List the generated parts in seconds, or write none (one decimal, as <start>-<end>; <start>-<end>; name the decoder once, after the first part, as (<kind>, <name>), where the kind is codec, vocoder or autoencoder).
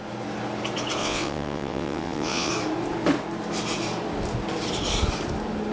1.0-2.5 (vocoder, WaveNeXt)